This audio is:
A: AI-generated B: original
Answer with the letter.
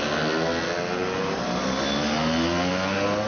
B